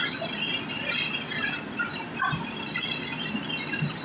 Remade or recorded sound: recorded